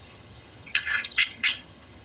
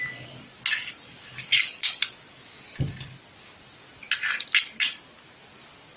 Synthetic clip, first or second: first